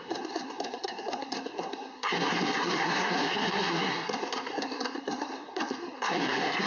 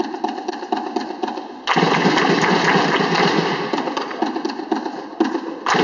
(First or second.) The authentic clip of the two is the second